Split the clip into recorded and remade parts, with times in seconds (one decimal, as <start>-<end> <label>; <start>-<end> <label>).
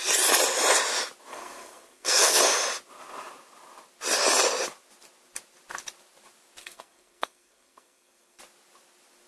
0.0-1.3 recorded; 1.3-2.4 remade; 2.4-6.6 recorded; 6.6-8.4 remade; 8.4-9.3 recorded